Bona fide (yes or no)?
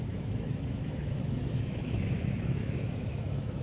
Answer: no